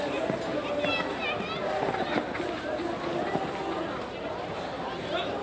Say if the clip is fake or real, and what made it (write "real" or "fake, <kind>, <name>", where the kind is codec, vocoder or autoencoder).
real